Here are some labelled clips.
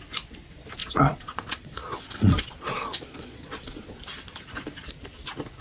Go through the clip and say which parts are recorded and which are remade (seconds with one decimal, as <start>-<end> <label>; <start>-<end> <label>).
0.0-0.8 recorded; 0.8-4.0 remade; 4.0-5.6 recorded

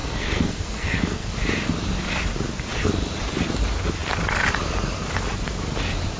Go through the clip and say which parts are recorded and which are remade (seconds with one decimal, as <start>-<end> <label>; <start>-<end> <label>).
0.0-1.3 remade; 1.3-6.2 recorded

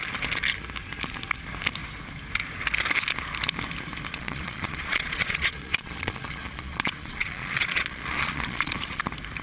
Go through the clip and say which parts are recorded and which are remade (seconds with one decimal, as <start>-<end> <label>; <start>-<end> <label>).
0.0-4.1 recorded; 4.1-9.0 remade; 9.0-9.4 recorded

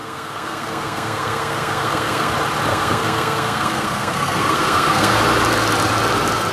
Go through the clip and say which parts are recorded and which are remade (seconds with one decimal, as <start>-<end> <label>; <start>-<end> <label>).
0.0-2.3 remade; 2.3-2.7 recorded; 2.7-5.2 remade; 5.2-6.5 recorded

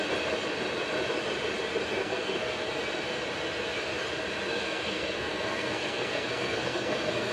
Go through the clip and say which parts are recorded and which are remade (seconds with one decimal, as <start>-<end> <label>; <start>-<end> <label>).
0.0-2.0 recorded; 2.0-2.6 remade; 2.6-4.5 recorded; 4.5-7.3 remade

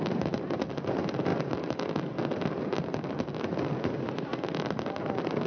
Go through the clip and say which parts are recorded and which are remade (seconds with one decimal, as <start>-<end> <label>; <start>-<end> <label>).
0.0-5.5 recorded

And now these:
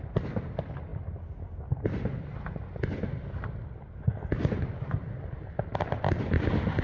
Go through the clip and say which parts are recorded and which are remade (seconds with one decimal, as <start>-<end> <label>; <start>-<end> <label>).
0.0-6.8 recorded